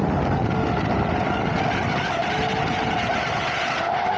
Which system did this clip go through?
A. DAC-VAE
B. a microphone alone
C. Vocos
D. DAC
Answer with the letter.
B